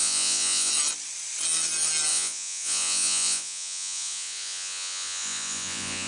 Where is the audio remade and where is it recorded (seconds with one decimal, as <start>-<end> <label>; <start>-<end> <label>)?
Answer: 0.0-0.7 remade; 0.7-2.1 recorded; 2.1-6.1 remade